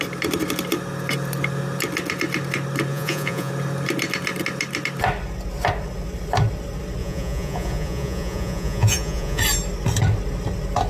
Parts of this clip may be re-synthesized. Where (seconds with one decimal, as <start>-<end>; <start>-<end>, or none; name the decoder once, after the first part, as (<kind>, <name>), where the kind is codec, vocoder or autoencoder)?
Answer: 2.9-3.5 (vocoder, Vocos); 7.0-9.4